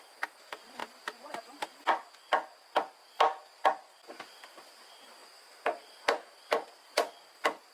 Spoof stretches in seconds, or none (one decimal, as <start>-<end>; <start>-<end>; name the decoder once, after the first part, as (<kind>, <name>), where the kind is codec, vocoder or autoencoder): 0.0-0.8 (vocoder, BigVGAN v2); 3.4-5.2; 6.7-7.7